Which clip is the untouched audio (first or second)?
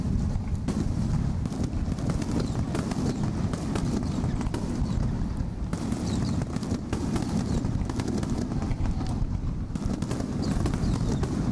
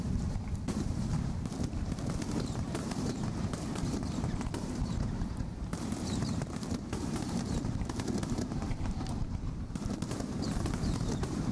first